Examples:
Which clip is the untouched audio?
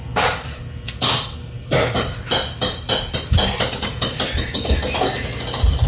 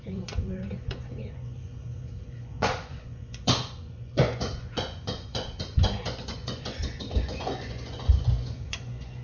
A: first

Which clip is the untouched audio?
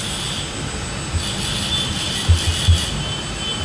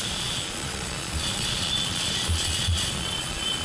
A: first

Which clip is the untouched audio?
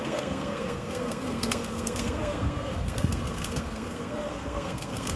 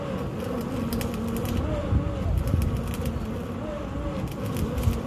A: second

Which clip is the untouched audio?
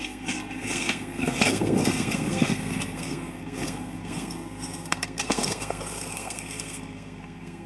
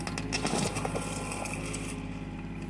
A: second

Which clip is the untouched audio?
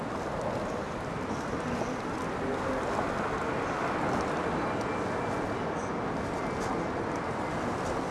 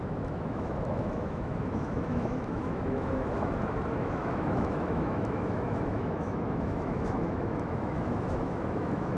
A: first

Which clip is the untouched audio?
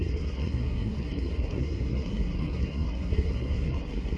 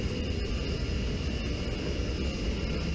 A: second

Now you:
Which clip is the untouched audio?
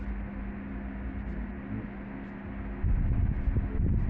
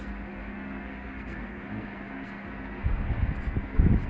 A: first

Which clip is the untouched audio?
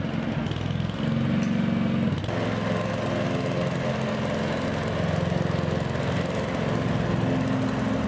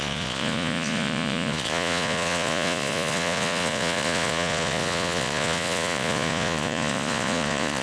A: first